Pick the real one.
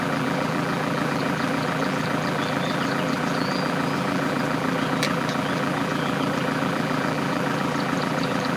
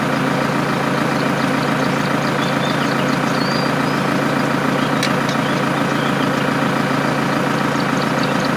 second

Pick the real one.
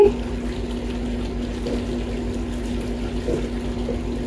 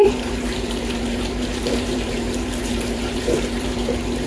first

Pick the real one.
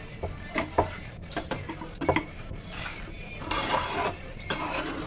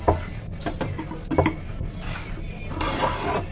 second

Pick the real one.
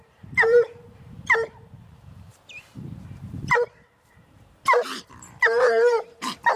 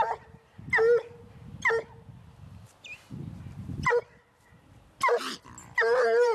second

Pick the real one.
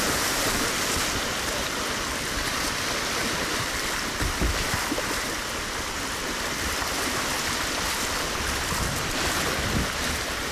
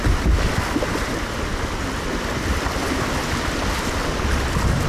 second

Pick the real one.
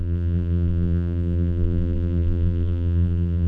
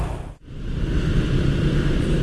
second